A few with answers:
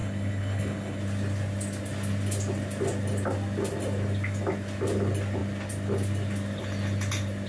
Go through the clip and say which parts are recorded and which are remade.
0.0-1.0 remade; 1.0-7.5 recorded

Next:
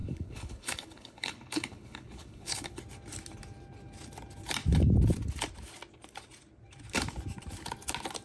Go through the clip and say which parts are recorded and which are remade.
0.0-2.8 remade; 2.8-8.2 recorded

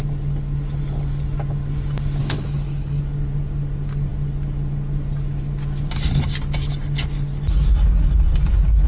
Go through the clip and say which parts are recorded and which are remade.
0.0-2.2 recorded; 2.2-3.0 remade; 3.0-8.9 recorded

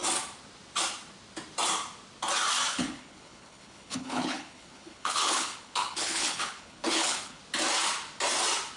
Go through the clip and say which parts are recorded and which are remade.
0.0-2.7 recorded; 2.7-7.4 remade; 7.4-8.8 recorded

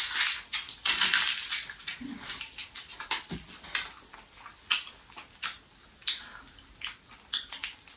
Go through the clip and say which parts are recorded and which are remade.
0.0-8.0 recorded

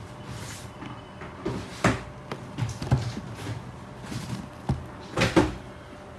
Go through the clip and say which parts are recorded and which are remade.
0.0-6.2 recorded

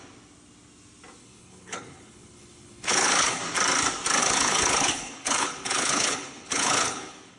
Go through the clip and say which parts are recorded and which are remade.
0.0-1.2 recorded; 1.2-3.4 remade; 3.4-4.2 recorded; 4.2-7.4 remade

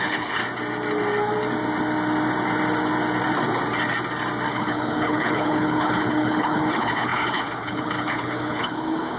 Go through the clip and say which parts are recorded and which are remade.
0.0-0.4 remade; 0.4-4.5 recorded; 4.5-9.2 remade